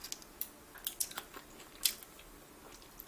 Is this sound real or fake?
real